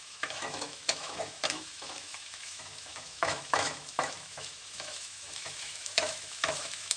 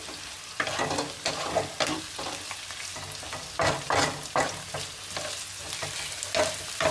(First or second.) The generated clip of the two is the first